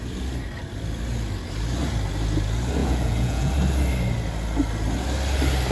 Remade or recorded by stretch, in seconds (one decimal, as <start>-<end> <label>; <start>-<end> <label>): 0.0-2.8 recorded; 2.8-3.5 remade; 3.5-5.7 recorded